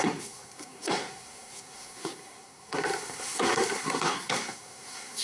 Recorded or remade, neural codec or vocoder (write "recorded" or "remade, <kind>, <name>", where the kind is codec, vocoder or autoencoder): remade, codec, SNAC